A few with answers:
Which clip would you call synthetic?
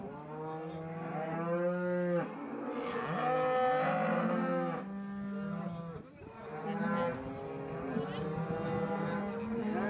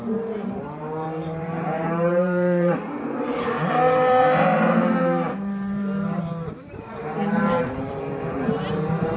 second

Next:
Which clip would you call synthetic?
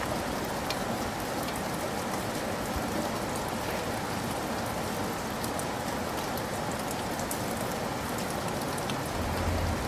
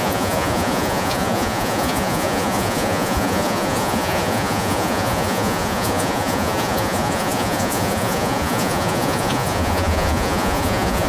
second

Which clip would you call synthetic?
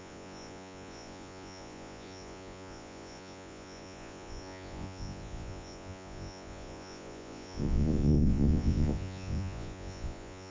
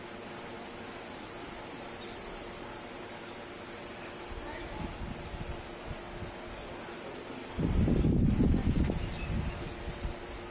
first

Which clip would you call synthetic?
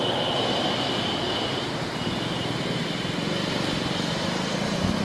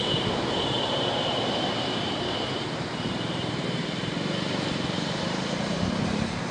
second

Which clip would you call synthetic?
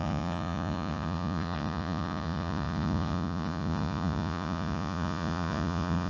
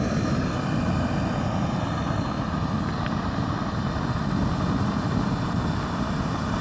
first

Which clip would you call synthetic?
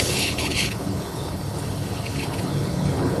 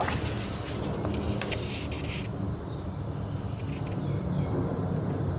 first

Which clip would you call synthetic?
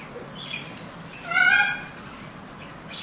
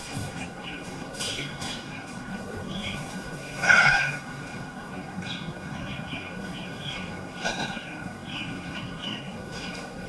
second